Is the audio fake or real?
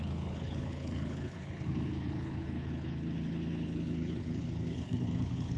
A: fake